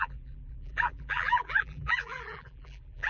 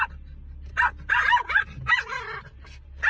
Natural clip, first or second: second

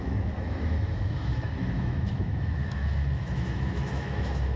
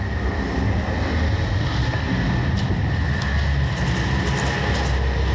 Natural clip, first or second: second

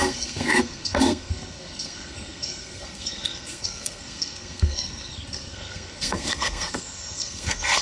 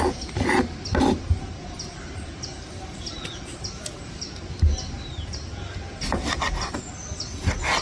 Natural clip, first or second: second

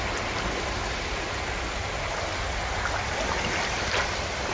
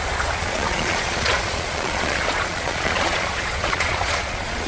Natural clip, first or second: first